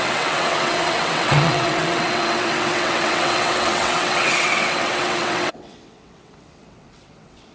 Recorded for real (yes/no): no